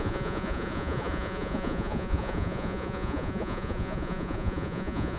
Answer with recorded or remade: remade